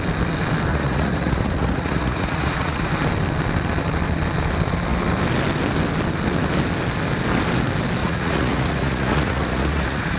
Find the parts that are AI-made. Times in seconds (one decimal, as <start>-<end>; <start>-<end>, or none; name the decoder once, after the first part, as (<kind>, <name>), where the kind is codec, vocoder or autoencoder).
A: 0.7-2.9 (vocoder, Vocos); 8.0-10.2